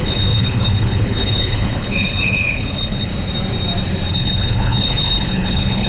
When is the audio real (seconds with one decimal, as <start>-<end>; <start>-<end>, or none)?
3.1-4.1